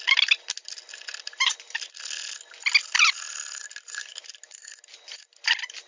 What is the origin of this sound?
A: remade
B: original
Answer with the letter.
B